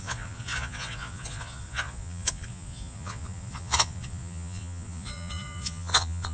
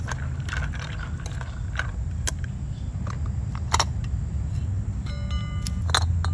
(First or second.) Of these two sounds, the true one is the second